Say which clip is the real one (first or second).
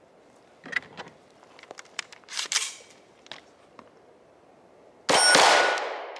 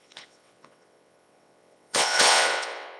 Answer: first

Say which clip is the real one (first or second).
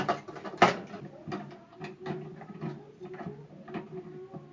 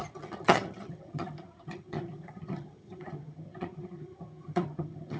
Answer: first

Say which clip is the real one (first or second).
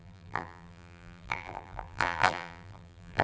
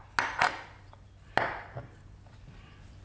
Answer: second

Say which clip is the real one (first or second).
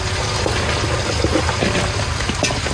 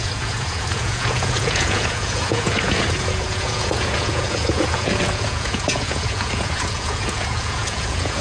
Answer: first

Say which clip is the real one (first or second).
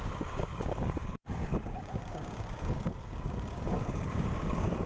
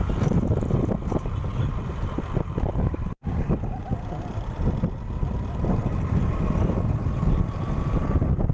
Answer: second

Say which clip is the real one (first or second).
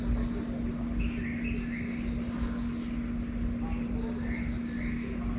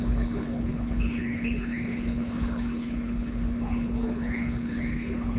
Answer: first